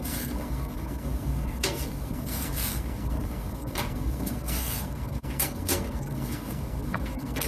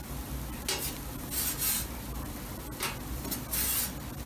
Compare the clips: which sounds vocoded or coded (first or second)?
first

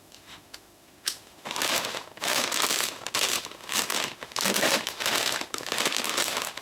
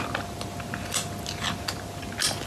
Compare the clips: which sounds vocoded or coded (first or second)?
first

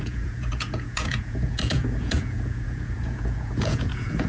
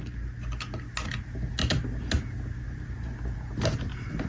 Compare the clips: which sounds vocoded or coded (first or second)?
first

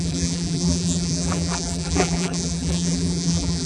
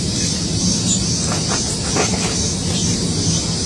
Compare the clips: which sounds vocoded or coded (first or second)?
first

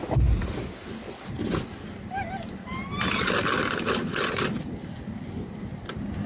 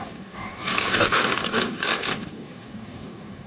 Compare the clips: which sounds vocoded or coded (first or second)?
second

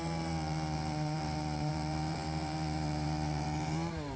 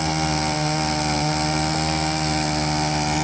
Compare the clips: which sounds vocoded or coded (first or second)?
first